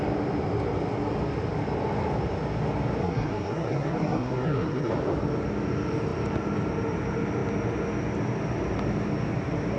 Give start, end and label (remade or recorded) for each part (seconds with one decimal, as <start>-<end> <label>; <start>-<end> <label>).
0.0-3.0 recorded; 3.0-4.9 remade; 4.9-9.8 recorded